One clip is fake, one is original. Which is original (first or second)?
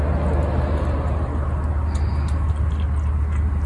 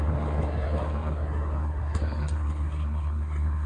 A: first